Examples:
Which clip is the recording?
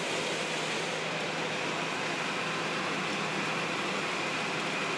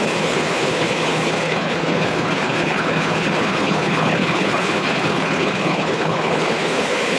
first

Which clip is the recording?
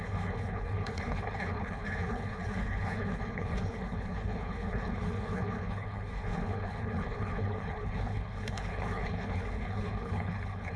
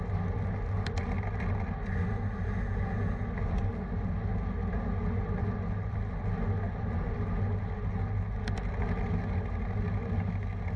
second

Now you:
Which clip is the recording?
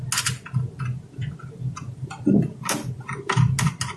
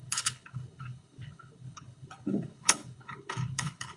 first